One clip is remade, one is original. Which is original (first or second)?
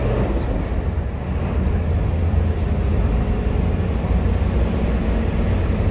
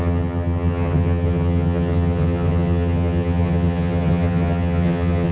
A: first